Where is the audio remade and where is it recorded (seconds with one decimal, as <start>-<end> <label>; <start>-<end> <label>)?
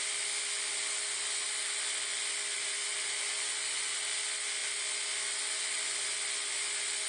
0.0-7.1 recorded